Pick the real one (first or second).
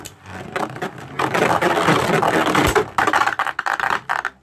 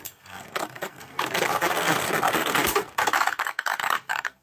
first